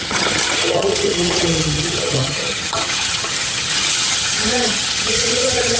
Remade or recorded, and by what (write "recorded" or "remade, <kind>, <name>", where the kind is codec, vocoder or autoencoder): remade, vocoder, HiFi-GAN